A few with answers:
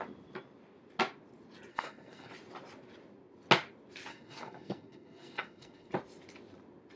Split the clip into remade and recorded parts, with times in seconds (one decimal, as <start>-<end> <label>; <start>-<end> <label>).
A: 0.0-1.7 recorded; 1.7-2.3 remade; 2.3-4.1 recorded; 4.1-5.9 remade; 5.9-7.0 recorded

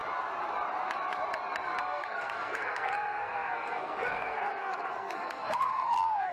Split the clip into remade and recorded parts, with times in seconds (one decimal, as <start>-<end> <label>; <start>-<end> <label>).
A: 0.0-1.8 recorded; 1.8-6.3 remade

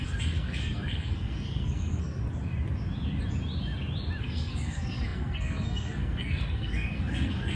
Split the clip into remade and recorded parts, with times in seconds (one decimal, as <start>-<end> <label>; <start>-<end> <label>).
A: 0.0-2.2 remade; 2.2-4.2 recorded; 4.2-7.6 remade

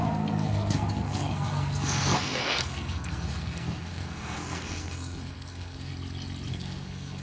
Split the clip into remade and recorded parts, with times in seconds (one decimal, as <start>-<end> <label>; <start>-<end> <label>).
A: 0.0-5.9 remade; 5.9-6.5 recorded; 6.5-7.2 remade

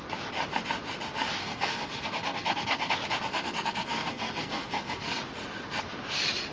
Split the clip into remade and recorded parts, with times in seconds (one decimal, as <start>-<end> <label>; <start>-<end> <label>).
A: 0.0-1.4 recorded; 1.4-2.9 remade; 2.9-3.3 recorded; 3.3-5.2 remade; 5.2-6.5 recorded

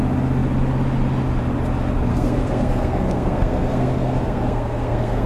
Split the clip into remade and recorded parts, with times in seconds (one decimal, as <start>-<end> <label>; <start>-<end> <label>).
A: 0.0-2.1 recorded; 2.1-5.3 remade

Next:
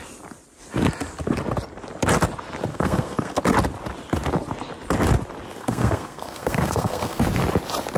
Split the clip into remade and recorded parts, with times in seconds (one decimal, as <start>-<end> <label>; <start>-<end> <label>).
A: 0.0-2.7 recorded; 2.7-3.3 remade; 3.3-5.6 recorded; 5.6-7.2 remade; 7.2-8.0 recorded

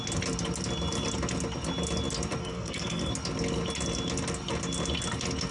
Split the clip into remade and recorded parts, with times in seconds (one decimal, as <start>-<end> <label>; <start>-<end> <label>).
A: 0.0-2.4 recorded; 2.4-3.1 remade; 3.1-5.5 recorded